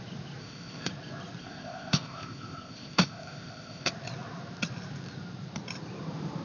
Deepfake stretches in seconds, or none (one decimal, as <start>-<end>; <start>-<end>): 0.4-0.9; 1.4-3.9